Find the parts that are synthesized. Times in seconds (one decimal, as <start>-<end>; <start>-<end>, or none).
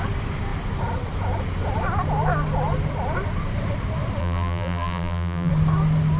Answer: 4.2-5.5